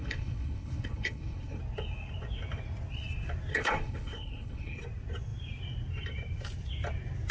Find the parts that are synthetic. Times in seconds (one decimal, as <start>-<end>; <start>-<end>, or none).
0.0-1.6; 3.5-4.8